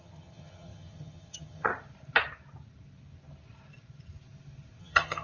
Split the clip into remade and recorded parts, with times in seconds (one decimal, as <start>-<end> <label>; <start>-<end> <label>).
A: 0.0-1.7 remade; 1.7-4.8 recorded; 4.8-5.2 remade

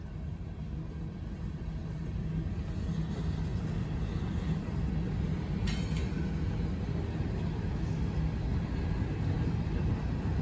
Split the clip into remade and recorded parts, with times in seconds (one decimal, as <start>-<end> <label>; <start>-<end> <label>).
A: 0.0-10.4 recorded